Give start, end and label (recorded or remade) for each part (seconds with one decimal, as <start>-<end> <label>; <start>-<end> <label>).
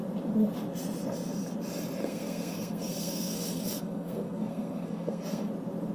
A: 0.0-2.0 recorded; 2.0-5.5 remade; 5.5-5.9 recorded